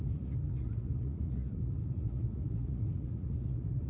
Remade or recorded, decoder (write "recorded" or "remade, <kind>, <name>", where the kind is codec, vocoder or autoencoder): remade, vocoder, Vocos